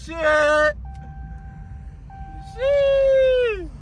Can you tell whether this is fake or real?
real